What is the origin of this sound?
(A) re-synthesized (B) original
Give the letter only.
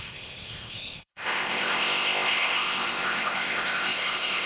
A